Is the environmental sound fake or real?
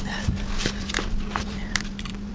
fake